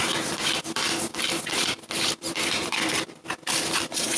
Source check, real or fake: fake